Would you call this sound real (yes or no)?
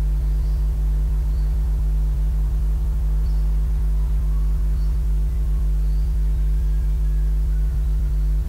no